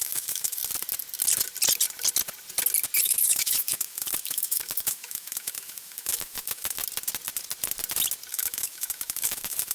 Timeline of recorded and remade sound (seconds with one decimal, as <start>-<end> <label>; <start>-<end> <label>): 0.0-0.6 remade; 0.6-3.0 recorded; 3.0-6.8 remade; 6.8-8.3 recorded; 8.3-9.7 remade